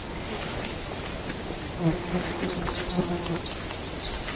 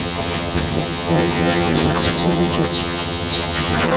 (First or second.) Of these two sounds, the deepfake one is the second